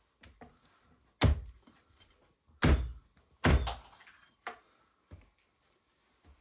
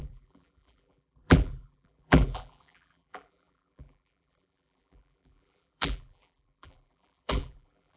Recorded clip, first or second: first